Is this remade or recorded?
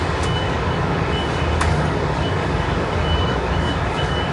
remade